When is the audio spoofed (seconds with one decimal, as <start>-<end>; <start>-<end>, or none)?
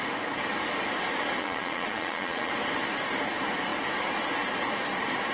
1.4-2.5